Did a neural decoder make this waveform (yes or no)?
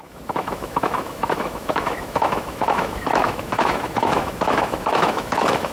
yes